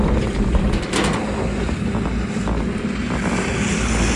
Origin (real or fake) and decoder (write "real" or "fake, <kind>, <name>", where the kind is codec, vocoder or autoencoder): real